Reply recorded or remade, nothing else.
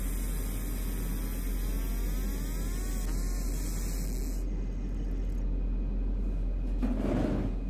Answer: recorded